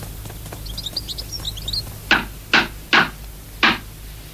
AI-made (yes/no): no